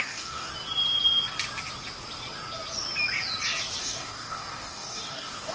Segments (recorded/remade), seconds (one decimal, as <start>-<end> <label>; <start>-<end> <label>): 0.0-0.5 remade; 0.5-3.8 recorded; 3.8-5.5 remade